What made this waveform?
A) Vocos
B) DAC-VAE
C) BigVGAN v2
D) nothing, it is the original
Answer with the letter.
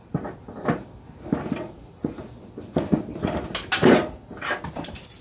D